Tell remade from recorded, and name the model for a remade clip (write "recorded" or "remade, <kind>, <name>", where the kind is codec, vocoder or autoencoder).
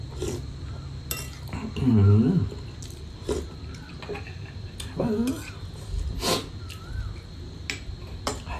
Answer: recorded